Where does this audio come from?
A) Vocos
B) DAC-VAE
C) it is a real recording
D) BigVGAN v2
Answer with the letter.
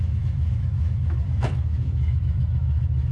B